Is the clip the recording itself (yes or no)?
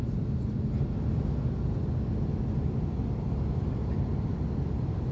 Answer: yes